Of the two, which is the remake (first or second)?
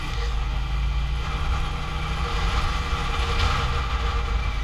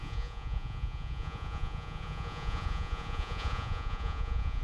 second